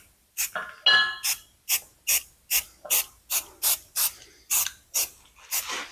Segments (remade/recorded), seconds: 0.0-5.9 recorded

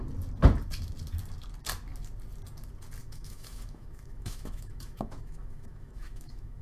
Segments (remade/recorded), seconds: 0.0-3.0 recorded; 3.0-6.6 remade

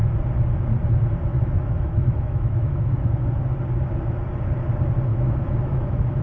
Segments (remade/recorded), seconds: 0.0-1.3 recorded; 1.3-3.3 remade; 3.3-5.1 recorded; 5.1-6.2 remade

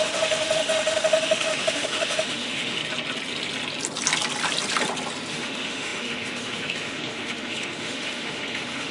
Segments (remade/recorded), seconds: 0.0-2.8 remade; 2.8-5.3 recorded; 5.3-8.9 remade

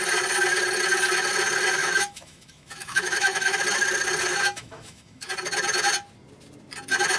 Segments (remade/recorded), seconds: 0.0-1.8 recorded; 1.8-3.6 remade; 3.6-4.3 recorded; 4.3-5.3 remade; 5.3-7.2 recorded

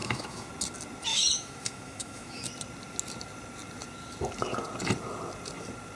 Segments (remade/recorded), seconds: 0.0-0.5 remade; 0.5-1.1 recorded; 1.1-2.5 remade; 2.5-6.0 recorded